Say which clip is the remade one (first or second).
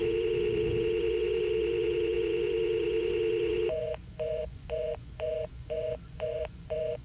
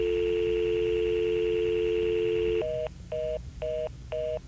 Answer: first